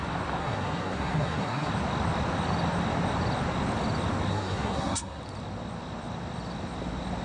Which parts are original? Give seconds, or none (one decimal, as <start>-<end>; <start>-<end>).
0.0-0.4; 1.7-4.3; 5.2-7.2